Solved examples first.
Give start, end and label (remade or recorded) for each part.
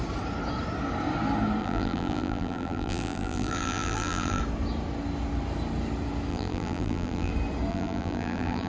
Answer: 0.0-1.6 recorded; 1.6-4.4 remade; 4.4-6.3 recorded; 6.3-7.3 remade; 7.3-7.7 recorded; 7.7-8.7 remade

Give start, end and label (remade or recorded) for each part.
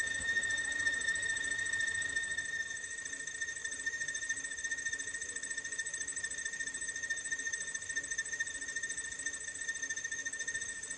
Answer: 0.0-3.6 recorded; 3.6-4.6 remade; 4.6-6.1 recorded; 6.1-9.6 remade; 9.6-11.0 recorded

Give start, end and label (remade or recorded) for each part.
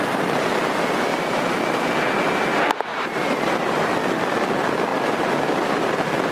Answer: 0.0-1.1 recorded; 1.1-1.8 remade; 1.8-2.9 recorded; 2.9-3.9 remade; 3.9-6.3 recorded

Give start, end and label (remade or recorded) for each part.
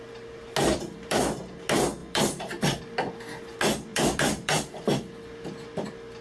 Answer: 0.0-0.7 recorded; 0.7-1.4 remade; 1.4-2.0 recorded; 2.0-2.8 remade; 2.8-3.9 recorded; 3.9-4.8 remade; 4.8-6.2 recorded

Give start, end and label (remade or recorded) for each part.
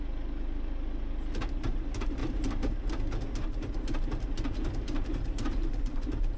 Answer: 0.0-2.2 recorded; 2.2-2.9 remade; 2.9-5.1 recorded; 5.1-6.4 remade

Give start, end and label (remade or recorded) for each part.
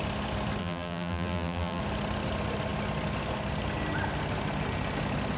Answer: 0.0-0.6 recorded; 0.6-1.8 remade; 1.8-5.4 recorded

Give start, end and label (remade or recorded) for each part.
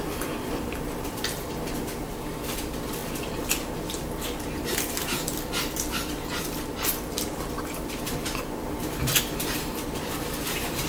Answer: 0.0-10.9 remade